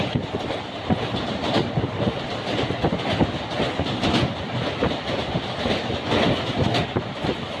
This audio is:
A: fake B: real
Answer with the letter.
B